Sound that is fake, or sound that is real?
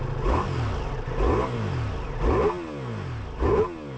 real